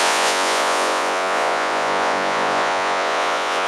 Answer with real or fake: fake